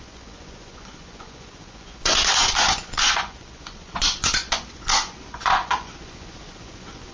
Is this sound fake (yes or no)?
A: yes